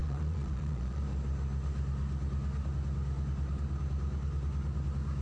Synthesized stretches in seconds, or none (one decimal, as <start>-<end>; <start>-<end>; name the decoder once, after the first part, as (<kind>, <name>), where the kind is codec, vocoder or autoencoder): 0.0-1.0 (vocoder, Vocos)